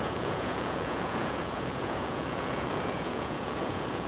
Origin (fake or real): fake